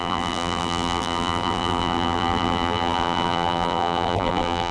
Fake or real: fake